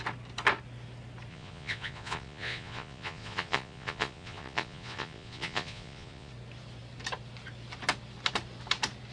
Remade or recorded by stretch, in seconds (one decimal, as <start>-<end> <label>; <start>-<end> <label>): 0.0-1.3 recorded; 1.3-6.3 remade; 6.3-9.1 recorded